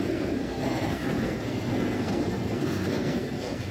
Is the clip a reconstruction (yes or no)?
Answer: yes